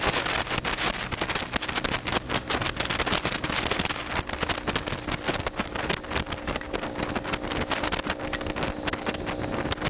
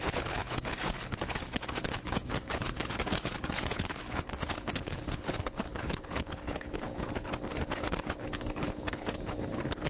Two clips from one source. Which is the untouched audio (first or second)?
first